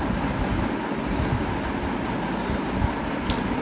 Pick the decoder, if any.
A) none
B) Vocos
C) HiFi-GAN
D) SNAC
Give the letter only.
A